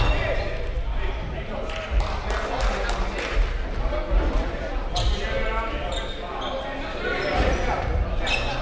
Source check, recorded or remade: recorded